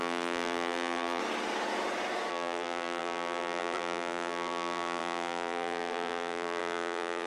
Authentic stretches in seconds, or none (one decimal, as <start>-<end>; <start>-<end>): 1.2-2.3